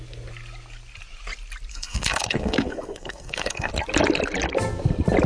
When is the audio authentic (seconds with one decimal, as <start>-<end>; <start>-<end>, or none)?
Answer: 0.0-1.7; 3.7-5.3